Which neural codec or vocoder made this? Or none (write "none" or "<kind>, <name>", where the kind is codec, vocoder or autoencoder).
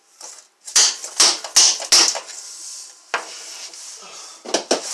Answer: none